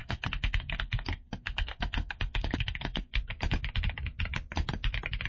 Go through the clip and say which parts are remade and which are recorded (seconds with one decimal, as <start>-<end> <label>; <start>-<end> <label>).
0.0-3.2 remade; 3.2-5.3 recorded

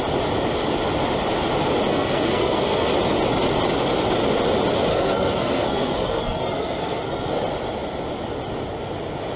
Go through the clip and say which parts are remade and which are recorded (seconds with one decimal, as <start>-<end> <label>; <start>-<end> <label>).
0.0-1.9 recorded; 1.9-2.9 remade; 2.9-4.9 recorded; 4.9-7.3 remade; 7.3-9.4 recorded

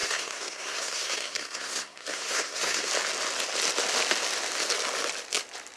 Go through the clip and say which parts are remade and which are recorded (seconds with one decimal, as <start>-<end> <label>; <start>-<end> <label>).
0.0-2.9 remade; 2.9-5.8 recorded

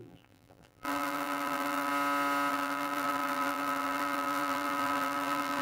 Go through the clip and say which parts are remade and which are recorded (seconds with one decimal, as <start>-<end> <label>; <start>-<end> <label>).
0.0-1.9 remade; 1.9-2.5 recorded; 2.5-5.6 remade

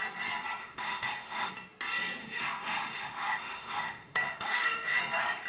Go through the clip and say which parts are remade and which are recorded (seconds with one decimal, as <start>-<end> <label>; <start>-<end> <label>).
0.0-0.6 recorded; 0.6-1.5 remade; 1.5-2.2 recorded; 2.2-5.0 remade; 5.0-5.5 recorded